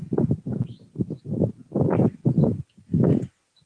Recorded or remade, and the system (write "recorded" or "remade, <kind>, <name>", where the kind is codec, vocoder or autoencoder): recorded